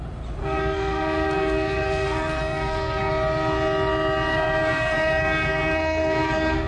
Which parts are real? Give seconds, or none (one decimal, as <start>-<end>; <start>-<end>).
0.0-0.4; 3.1-4.3

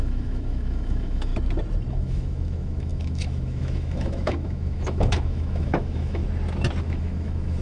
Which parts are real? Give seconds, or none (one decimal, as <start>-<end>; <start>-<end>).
1.3-1.9; 6.2-6.8

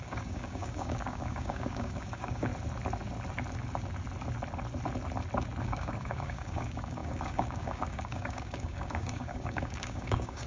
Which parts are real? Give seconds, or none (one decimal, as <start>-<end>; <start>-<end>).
2.5-5.6

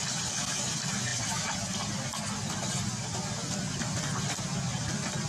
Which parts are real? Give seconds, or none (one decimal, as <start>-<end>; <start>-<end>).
0.0-5.3